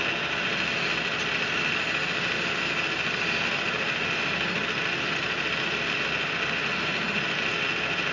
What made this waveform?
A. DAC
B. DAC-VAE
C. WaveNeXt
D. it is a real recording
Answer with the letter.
D